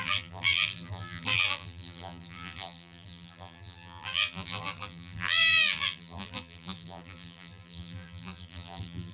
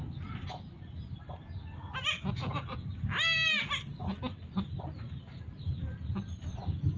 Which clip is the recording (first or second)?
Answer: second